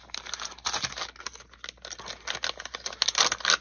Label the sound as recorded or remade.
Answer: recorded